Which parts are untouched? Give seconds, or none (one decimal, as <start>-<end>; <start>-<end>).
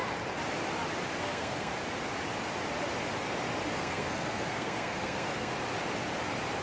0.0-1.2; 1.7-3.7; 5.5-6.6